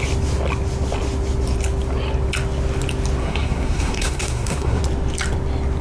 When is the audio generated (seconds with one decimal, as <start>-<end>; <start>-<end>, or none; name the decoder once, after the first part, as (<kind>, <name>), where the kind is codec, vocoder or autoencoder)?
3.2-4.8 (codec, SNAC)